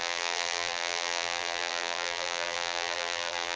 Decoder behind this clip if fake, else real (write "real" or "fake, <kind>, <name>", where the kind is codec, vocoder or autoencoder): fake, vocoder, BigVGAN v2